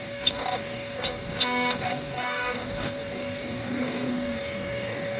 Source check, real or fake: fake